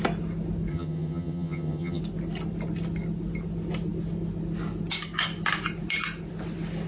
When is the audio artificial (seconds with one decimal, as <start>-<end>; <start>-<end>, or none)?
0.7-2.0